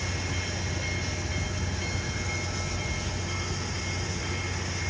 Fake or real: real